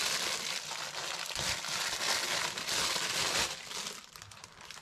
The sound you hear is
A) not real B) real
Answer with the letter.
B